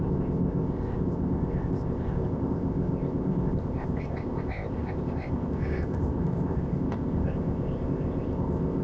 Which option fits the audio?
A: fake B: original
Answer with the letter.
A